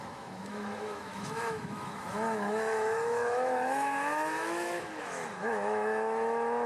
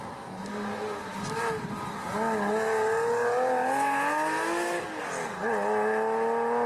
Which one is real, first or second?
second